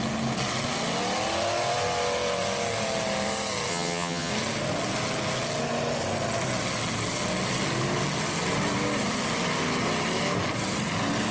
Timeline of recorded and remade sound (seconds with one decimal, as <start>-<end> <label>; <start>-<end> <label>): 0.0-3.7 recorded; 3.7-4.3 remade; 4.3-11.3 recorded